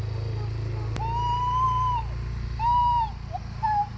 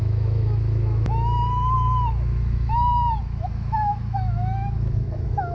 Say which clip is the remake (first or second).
second